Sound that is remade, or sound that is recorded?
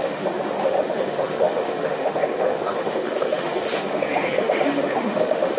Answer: remade